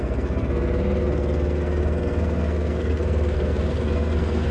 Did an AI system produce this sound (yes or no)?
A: yes